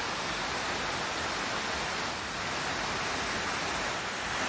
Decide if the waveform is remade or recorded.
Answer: recorded